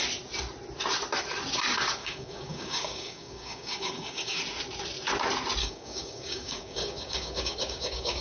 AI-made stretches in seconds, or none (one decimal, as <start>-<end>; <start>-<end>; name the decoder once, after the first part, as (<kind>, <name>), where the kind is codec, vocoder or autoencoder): 2.0-4.4 (codec, DAC); 5.6-8.2